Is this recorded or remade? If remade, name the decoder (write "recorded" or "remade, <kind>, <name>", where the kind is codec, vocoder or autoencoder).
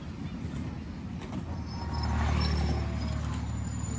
recorded